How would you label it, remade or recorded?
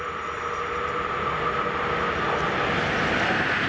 recorded